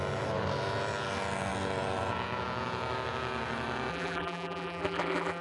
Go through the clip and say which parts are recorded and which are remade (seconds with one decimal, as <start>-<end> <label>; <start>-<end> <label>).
0.0-3.9 recorded; 3.9-5.4 remade